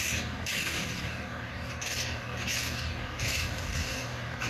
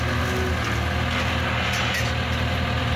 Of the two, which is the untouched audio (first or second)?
second